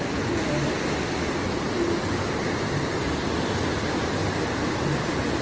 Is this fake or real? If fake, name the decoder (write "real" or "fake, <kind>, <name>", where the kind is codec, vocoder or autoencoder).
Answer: real